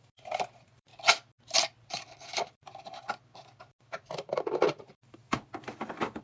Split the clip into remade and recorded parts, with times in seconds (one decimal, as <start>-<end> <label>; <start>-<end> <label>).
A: 0.0-0.9 remade; 0.9-1.8 recorded; 1.8-6.2 remade